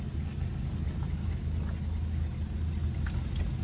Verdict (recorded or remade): recorded